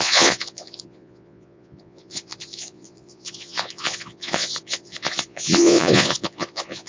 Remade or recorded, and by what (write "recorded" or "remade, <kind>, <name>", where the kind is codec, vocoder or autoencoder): remade, vocoder, Vocos